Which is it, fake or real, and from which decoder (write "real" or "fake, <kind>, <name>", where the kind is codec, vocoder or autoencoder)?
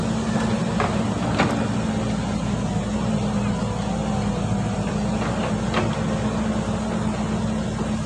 real